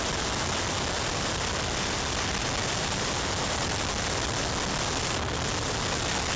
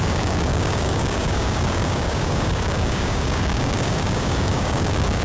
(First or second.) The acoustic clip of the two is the first